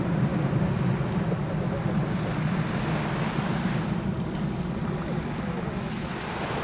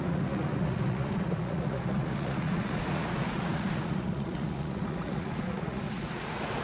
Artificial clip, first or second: second